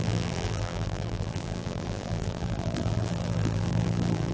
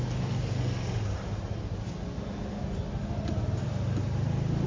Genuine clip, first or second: second